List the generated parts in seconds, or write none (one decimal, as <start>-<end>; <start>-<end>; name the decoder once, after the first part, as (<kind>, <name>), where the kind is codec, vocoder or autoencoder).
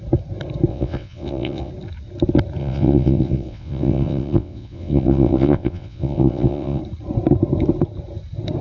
0.7-1.7 (vocoder, WaveNeXt); 2.6-6.8